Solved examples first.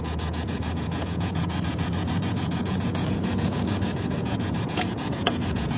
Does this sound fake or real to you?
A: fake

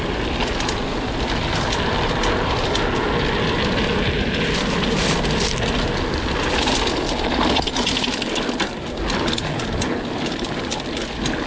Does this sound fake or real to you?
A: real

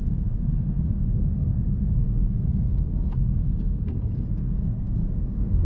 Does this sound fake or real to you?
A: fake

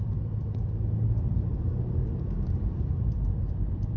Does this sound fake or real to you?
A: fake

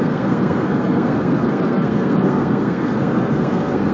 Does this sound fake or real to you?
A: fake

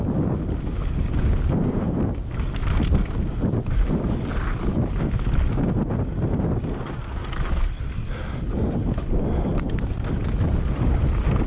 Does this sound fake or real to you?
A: real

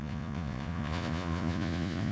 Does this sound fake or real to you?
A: fake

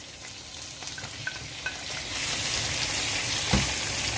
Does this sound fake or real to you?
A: real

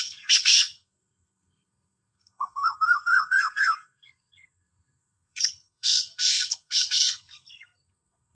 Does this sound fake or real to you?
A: fake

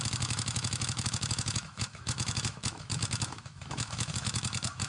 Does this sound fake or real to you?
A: fake